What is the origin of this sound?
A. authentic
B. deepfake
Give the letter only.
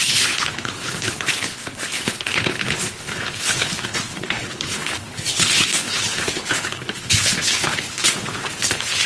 B